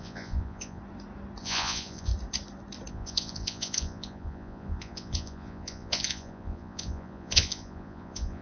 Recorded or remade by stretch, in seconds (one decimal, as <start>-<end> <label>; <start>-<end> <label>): 0.0-0.8 remade; 0.8-1.4 recorded; 1.4-2.1 remade; 2.1-2.9 recorded; 2.9-8.4 remade